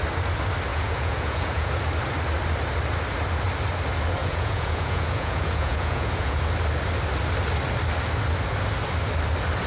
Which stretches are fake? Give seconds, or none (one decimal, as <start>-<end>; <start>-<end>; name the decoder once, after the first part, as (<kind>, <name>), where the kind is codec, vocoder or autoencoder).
0.7-1.7 (vocoder, Vocos); 4.2-6.4